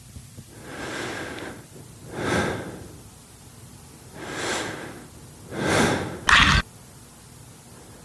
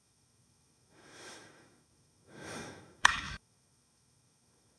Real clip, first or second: first